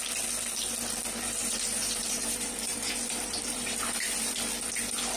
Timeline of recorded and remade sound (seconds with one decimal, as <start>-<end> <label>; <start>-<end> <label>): 0.0-1.4 recorded; 1.4-4.4 remade; 4.4-5.2 recorded